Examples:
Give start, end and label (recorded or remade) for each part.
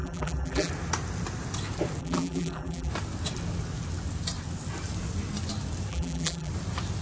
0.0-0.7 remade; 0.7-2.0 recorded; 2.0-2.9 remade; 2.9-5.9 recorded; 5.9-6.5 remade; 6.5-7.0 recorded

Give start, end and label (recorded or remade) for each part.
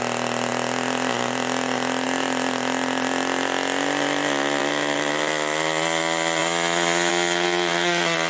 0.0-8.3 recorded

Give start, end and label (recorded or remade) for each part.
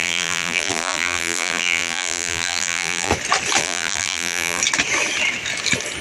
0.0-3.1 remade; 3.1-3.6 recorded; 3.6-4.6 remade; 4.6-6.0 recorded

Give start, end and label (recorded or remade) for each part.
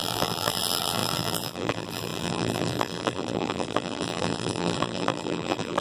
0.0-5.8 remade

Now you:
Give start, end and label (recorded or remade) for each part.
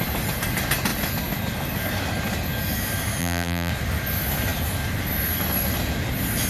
0.0-3.2 recorded; 3.2-3.7 remade; 3.7-6.5 recorded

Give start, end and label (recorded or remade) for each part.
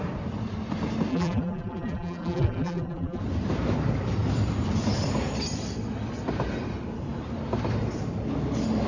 0.0-1.1 recorded; 1.1-3.2 remade; 3.2-8.9 recorded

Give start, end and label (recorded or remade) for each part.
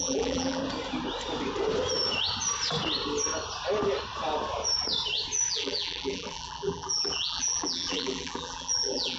0.0-0.6 remade; 0.6-5.5 recorded; 5.5-9.2 remade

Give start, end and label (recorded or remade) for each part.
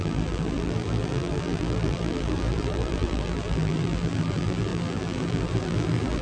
0.0-6.2 remade